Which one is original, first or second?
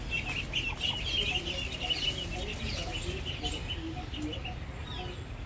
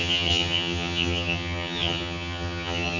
first